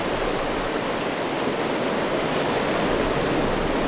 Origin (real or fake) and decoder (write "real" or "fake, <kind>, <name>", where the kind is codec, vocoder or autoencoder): real